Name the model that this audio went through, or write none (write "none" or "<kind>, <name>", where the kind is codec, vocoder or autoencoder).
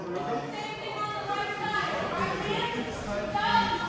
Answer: none